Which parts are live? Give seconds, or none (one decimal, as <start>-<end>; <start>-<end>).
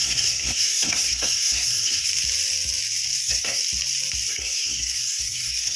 2.1-3.2; 3.6-4.3